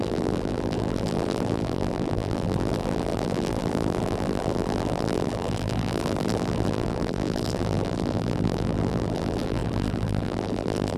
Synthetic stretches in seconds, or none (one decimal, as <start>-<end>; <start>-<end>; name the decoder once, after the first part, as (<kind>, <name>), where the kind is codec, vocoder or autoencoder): 0.0-11.0 (vocoder, BigVGAN v2)